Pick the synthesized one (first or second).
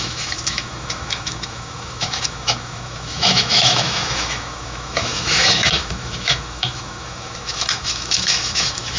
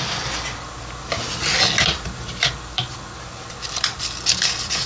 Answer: first